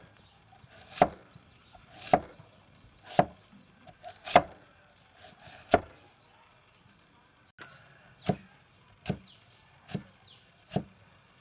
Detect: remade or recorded recorded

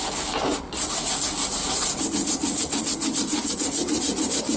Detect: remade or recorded recorded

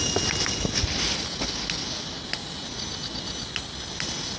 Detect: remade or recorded recorded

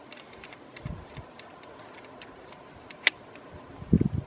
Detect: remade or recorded recorded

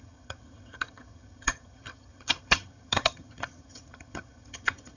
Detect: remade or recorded remade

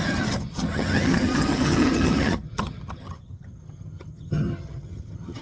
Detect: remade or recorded remade